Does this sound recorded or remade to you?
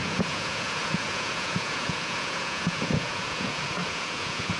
remade